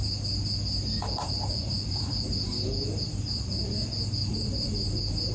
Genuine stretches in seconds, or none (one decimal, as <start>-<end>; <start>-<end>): 0.0-1.0; 2.5-3.1; 3.7-5.3